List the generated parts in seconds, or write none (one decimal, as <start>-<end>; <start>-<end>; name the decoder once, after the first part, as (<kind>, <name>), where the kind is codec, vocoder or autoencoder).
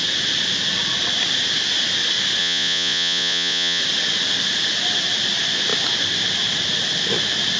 2.4-3.8 (vocoder, Vocos)